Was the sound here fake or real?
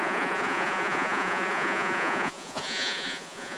fake